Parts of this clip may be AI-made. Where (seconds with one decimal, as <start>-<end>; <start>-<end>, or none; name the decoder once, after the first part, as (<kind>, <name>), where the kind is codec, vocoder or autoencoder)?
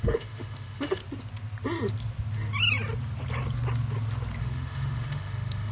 0.0-1.0 (autoencoder, DAC-VAE); 4.4-5.7